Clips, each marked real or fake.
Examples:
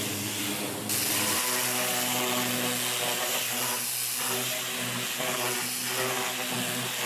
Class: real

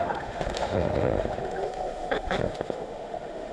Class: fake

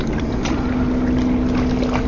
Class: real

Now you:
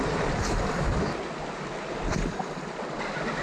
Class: real